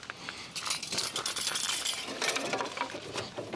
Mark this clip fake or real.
fake